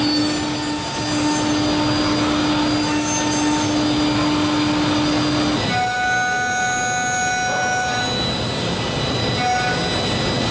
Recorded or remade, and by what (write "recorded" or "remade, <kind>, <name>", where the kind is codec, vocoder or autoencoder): recorded